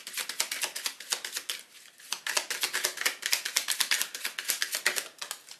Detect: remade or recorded recorded